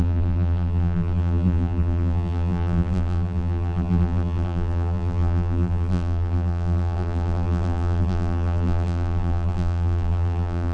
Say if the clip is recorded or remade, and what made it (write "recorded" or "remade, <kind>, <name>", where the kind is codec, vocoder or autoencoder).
remade, vocoder, BigVGAN v2